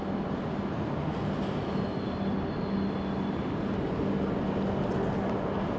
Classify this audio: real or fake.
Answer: real